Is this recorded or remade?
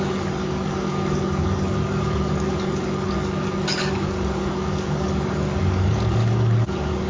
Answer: remade